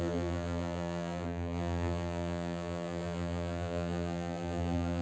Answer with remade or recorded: remade